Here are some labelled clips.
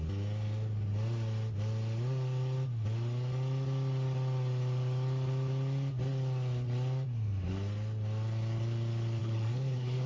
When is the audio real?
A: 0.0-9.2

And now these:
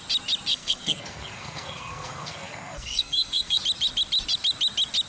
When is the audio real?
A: 0.0-0.5; 3.6-5.1

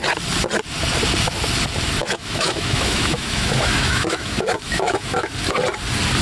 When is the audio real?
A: 0.0-2.0; 5.3-6.2

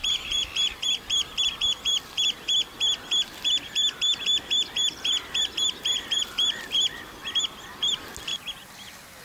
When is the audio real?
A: 0.5-8.3

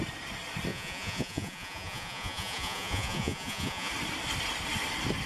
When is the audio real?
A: 0.0-0.7; 3.9-5.3

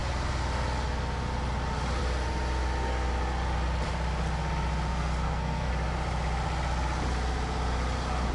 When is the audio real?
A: 0.0-4.9; 5.7-8.3